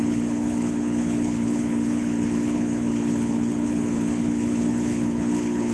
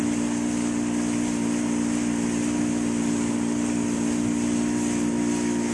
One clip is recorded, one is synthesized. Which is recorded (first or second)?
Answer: second